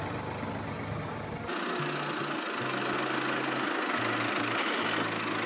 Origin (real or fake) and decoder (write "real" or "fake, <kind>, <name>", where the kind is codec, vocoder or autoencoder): real